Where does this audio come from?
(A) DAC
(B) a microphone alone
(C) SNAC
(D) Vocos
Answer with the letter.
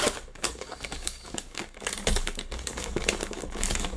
A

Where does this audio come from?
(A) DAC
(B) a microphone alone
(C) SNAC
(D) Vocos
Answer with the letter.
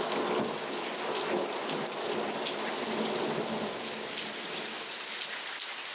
B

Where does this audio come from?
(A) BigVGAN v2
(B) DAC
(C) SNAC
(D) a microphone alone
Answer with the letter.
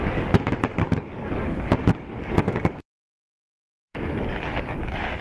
B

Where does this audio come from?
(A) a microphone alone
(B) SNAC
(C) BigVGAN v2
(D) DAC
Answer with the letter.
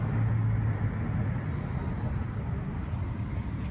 A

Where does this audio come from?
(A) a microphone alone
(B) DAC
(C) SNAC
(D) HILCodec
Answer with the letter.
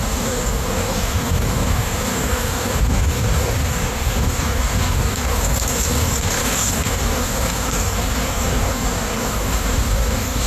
B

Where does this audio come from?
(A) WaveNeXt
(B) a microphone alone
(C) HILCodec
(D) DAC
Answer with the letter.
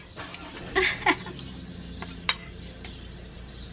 B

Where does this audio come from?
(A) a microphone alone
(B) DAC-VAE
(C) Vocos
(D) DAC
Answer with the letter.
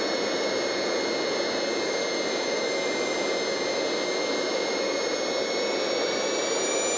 A